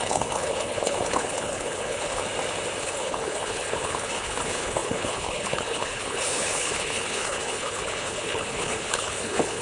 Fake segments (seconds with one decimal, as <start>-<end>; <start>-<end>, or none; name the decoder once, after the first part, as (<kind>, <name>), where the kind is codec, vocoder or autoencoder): 0.0-2.2 (codec, HILCodec); 2.8-9.6